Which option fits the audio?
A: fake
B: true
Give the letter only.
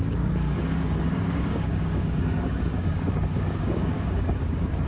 A